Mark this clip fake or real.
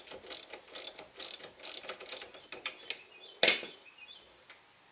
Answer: real